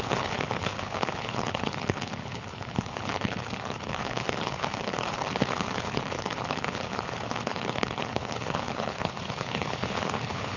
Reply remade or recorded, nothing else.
remade